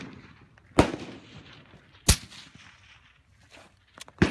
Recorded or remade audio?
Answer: recorded